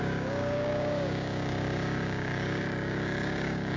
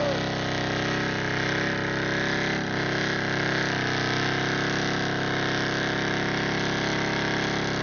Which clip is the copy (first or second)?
first